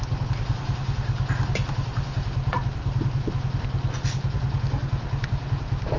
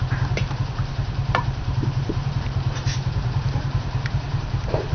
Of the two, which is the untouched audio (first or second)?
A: first